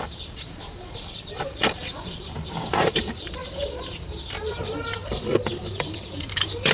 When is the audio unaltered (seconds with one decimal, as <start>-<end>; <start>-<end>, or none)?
none